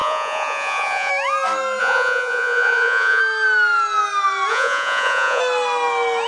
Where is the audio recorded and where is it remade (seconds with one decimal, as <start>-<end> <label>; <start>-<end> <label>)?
0.0-1.1 remade; 1.1-1.8 recorded; 1.8-3.2 remade; 3.2-4.5 recorded; 4.5-5.4 remade; 5.4-6.3 recorded